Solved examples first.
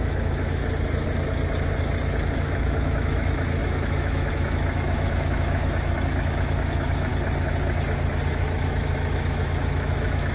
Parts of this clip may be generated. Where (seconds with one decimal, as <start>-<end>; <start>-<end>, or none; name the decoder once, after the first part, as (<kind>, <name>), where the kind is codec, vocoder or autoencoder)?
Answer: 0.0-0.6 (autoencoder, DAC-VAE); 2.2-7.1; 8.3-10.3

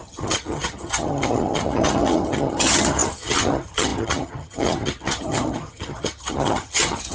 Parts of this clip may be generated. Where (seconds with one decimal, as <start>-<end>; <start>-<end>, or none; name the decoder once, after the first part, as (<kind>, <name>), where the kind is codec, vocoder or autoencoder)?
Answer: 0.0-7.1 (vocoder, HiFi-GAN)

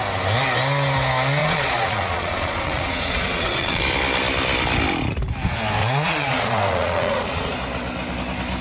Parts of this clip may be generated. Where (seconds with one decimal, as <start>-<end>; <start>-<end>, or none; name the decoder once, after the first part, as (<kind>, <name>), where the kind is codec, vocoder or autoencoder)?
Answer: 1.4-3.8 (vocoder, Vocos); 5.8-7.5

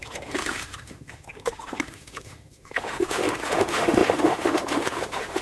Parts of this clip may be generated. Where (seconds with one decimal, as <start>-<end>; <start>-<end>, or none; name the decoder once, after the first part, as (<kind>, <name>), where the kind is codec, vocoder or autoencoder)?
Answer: 0.0-5.4 (autoencoder, DAC-VAE)

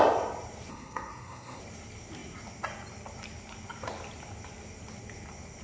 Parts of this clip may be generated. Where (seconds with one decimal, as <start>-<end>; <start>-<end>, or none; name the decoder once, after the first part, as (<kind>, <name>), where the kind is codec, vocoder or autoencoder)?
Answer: 0.7-1.6 (codec, SNAC)

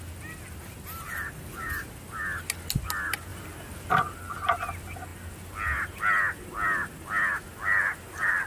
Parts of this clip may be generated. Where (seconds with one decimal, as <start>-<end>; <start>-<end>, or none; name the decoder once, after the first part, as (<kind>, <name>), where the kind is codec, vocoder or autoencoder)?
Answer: none